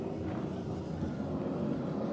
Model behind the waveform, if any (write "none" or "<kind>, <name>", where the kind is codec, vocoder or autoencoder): vocoder, BigVGAN v2